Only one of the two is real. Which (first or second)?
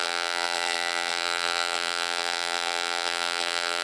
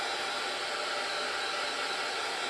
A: second